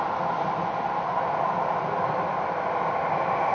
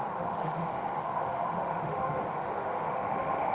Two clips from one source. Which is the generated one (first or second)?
second